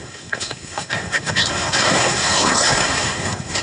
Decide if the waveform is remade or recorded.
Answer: remade